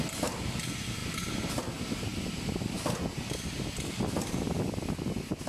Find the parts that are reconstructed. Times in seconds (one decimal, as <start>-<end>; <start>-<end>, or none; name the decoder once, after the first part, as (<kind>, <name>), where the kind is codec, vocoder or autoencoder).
none